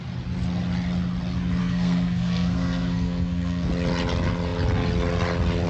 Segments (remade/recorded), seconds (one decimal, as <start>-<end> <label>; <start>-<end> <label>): 0.0-1.6 recorded; 1.6-3.7 remade; 3.7-5.7 recorded